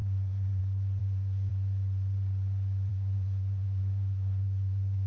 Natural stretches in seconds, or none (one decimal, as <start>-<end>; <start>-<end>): 0.6-1.0; 1.5-2.9